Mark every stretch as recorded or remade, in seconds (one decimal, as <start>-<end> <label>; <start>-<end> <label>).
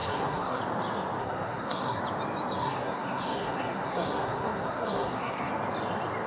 0.0-0.6 remade; 0.6-1.2 recorded; 1.2-2.0 remade; 2.0-2.6 recorded; 2.6-5.5 remade; 5.5-6.3 recorded